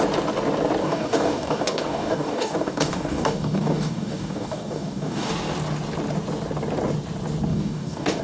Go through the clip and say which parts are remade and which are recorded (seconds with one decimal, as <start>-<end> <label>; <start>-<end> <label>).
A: 0.0-0.8 recorded; 0.8-5.3 remade; 5.3-7.5 recorded; 7.5-8.2 remade